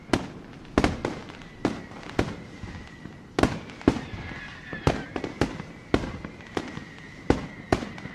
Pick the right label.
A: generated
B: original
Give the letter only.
B